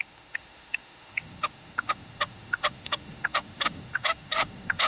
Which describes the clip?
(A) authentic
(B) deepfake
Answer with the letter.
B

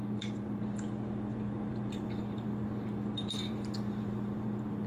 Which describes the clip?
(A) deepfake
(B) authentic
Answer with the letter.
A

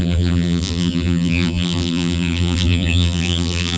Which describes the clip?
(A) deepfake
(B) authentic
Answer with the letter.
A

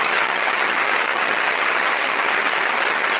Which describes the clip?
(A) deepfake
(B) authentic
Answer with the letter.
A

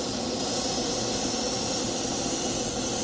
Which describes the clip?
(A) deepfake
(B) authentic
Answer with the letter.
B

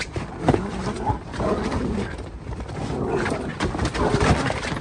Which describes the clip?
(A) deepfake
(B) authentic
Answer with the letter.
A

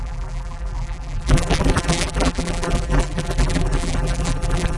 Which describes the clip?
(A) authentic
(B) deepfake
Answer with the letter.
B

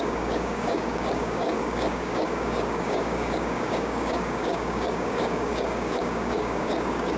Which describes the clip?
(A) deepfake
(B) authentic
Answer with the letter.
A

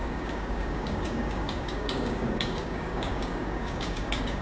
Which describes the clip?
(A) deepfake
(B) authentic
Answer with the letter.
A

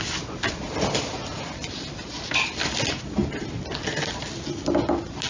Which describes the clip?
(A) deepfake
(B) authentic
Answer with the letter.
B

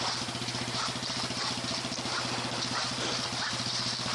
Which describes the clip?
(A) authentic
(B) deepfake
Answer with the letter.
A